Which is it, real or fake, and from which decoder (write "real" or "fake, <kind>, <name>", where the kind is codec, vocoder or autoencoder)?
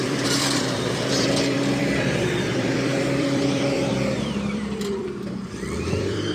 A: fake, vocoder, BigVGAN v2